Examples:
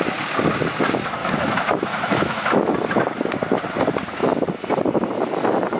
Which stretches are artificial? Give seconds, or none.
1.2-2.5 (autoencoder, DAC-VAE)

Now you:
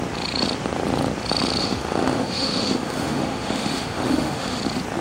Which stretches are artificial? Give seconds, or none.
1.6-4.6 (autoencoder, DAC-VAE)

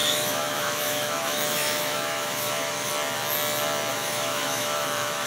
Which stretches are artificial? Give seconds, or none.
0.0-2.9 (autoencoder, DAC-VAE); 3.9-5.3

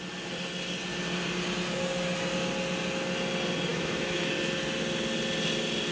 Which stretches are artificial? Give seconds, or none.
3.7-4.3 (autoencoder, DAC-VAE)

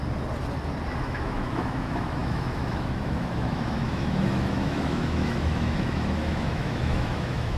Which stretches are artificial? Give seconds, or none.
1.0-7.6 (autoencoder, DAC-VAE)

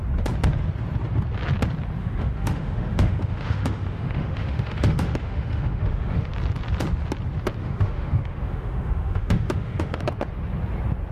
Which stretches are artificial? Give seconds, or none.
2.0-6.3 (autoencoder, DAC-VAE); 7.6-10.0

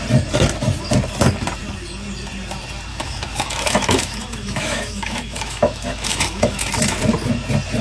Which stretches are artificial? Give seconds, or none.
2.9-7.0 (autoencoder, DAC-VAE)